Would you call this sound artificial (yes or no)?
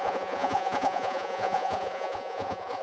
yes